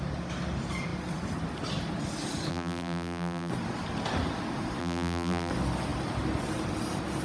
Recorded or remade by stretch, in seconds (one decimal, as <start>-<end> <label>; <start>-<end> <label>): 0.0-2.5 recorded; 2.5-3.5 remade; 3.5-4.8 recorded; 4.8-5.5 remade; 5.5-7.2 recorded